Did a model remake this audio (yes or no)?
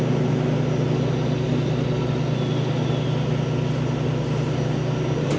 no